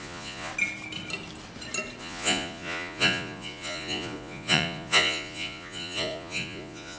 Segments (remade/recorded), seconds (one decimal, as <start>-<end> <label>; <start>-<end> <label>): 0.0-0.5 remade; 0.5-2.0 recorded; 2.0-7.0 remade